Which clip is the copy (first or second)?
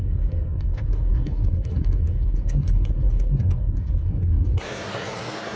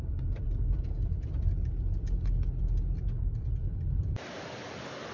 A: first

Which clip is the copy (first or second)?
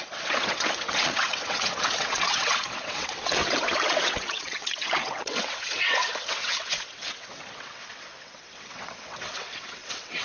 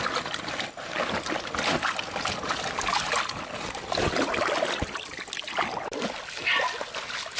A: first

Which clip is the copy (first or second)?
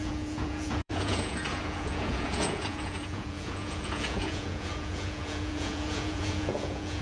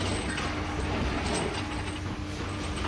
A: first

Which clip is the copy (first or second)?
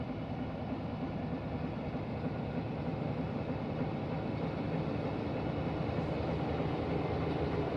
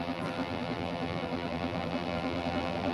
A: second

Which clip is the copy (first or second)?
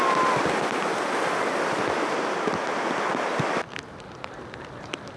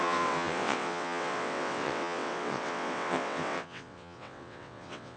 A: second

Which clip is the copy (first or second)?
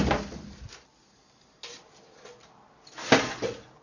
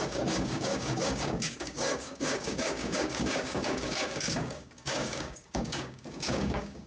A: second